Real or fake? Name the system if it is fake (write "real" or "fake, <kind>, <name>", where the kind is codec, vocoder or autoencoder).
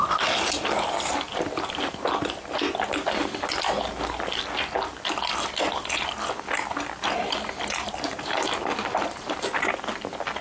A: real